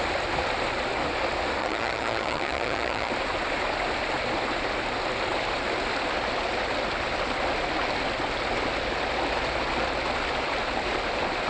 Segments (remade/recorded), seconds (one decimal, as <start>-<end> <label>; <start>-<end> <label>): 0.0-1.6 recorded; 1.6-3.1 remade; 3.1-11.5 recorded